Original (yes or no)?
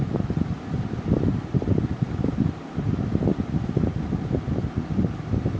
yes